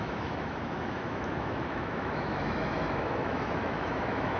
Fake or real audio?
fake